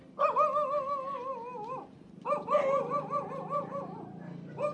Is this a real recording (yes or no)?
yes